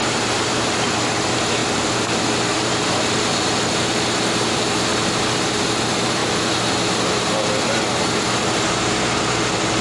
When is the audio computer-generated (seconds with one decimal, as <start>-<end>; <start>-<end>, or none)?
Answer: 0.0-6.2; 7.2-9.8